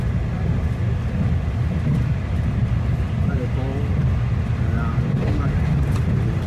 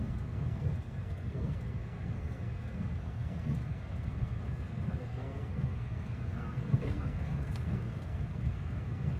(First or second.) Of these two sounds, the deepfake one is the second